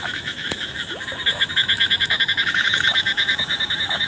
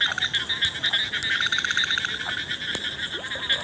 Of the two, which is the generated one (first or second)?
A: first